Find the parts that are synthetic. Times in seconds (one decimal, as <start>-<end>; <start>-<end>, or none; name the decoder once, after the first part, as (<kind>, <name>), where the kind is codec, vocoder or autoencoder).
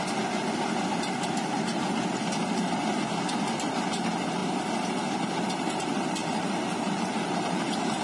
3.7-4.4 (vocoder, BigVGAN v2); 5.1-8.0